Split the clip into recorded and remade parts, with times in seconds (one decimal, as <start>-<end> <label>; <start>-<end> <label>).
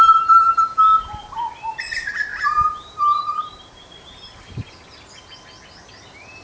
0.0-2.3 recorded; 2.3-4.7 remade; 4.7-6.4 recorded